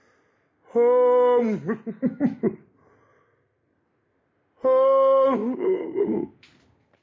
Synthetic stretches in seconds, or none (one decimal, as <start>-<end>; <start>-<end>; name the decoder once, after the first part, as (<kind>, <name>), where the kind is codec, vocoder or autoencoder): 5.4-6.3 (codec, DAC)